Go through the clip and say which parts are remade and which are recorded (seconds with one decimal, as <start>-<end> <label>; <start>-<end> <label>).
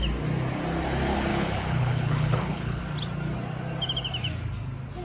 0.0-1.3 recorded; 1.3-2.8 remade; 2.8-5.0 recorded